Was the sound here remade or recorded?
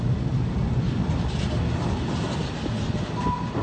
recorded